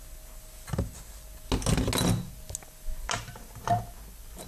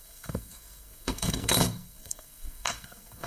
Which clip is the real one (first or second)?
first